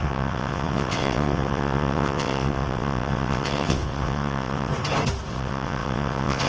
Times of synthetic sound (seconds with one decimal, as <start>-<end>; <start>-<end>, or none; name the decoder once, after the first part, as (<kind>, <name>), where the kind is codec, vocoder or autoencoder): 0.0-4.7 (vocoder, WaveNeXt); 5.3-6.5